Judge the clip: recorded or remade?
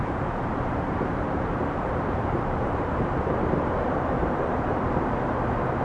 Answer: remade